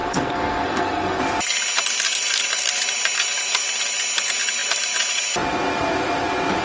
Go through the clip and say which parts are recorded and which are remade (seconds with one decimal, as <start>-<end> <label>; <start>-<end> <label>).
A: 0.0-1.2 remade; 1.2-6.6 recorded